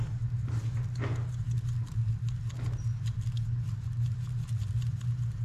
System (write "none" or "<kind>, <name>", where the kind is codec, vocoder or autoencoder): none